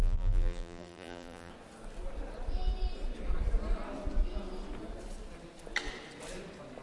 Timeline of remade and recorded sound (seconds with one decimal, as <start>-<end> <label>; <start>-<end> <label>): 0.0-1.5 remade; 1.5-6.8 recorded